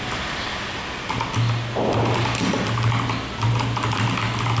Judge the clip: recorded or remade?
recorded